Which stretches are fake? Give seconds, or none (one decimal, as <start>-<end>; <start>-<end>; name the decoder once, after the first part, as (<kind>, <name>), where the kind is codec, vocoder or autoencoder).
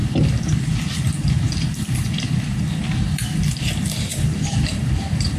none